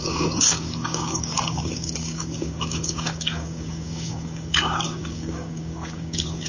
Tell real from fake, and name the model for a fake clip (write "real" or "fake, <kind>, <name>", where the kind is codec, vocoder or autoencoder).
fake, codec, DAC